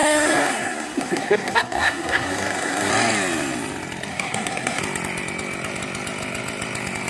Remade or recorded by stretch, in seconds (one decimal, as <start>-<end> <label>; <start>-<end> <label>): 0.0-2.9 remade; 2.9-4.1 recorded; 4.1-4.8 remade; 4.8-7.1 recorded